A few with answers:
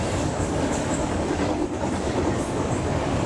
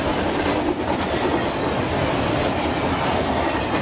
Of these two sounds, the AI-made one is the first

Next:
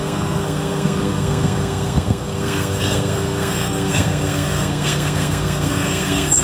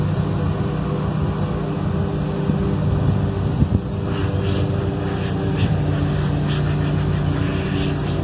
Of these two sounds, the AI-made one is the first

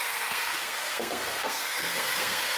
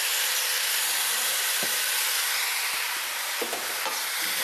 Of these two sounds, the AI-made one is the first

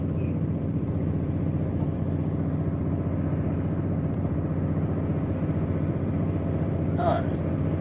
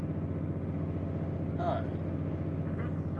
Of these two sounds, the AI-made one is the first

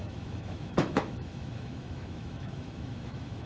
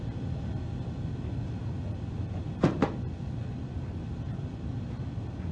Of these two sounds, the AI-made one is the first